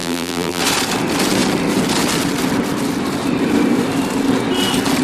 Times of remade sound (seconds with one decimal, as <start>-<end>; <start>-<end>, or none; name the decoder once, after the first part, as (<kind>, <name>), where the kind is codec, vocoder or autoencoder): 0.0-0.6 (vocoder, BigVGAN v2)